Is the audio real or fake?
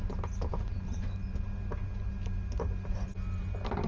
real